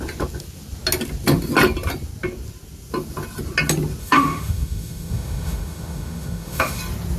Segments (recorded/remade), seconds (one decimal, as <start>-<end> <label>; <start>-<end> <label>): 0.0-4.0 recorded; 4.0-6.8 remade; 6.8-7.2 recorded